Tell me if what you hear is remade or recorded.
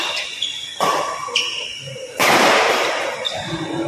remade